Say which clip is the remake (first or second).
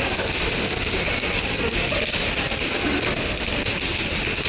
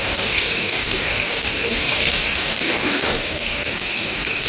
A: second